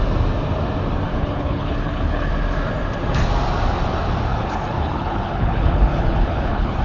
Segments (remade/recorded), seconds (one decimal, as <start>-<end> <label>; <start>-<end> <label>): 0.0-1.1 recorded; 1.1-2.3 remade; 2.3-4.3 recorded; 4.3-6.8 remade